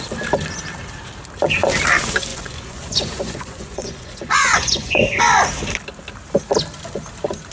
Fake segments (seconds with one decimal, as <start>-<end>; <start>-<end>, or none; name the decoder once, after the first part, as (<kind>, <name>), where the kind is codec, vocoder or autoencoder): 2.3-5.2 (vocoder, Vocos)

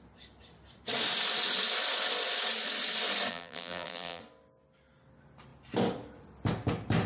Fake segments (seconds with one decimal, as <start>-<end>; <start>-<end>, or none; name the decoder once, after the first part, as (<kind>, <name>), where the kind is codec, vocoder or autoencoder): 3.3-4.2 (vocoder, BigVGAN v2)